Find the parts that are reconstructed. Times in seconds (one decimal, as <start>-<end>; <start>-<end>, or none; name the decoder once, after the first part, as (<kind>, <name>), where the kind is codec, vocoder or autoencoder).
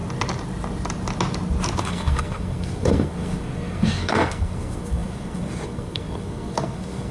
1.8-7.1 (codec, SNAC)